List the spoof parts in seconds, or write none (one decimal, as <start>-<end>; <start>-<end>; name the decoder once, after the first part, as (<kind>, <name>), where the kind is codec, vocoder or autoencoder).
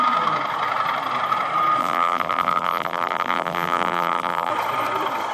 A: 1.8-4.5 (vocoder, BigVGAN v2)